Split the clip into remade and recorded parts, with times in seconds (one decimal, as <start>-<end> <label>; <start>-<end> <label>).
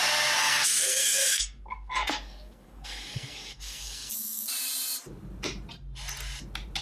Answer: 0.0-0.4 recorded; 0.4-4.5 remade; 4.5-6.8 recorded